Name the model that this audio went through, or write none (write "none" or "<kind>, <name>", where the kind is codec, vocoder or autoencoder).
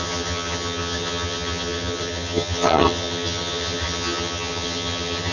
vocoder, HiFi-GAN